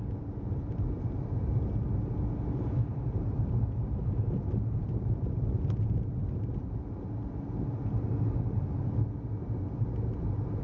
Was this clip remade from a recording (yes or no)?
no